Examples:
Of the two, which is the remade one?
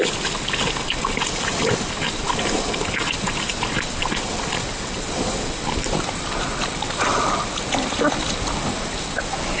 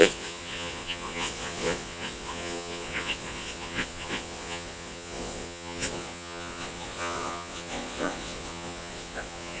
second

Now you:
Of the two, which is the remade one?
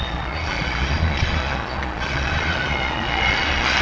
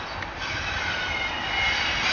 first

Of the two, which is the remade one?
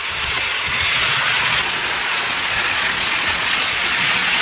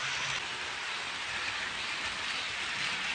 first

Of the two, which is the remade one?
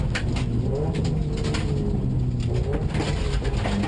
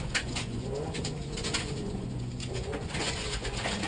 second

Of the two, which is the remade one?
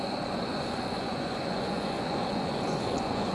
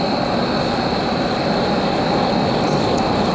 first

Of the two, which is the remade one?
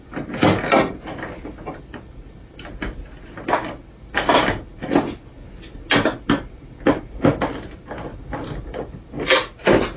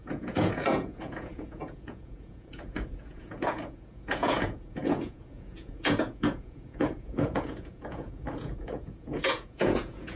second